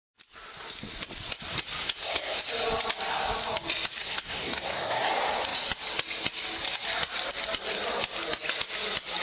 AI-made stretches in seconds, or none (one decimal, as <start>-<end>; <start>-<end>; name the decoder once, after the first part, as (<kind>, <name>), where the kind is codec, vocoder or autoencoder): 1.8-2.4 (codec, SNAC); 4.0-5.1